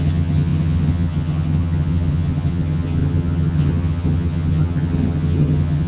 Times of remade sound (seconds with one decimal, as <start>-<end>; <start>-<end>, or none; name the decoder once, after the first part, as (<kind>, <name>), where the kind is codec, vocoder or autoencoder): 0.0-5.9 (vocoder, HiFi-GAN)